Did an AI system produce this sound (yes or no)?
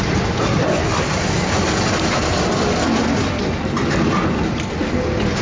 no